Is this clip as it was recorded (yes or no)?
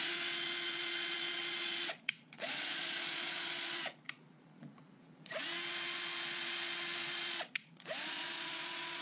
no